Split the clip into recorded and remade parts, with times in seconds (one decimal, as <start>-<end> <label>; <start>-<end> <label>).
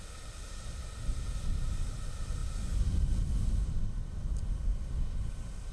0.0-5.7 recorded